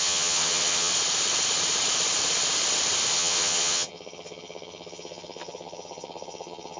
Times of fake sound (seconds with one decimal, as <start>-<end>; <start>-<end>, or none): 0.0-0.9; 3.1-6.8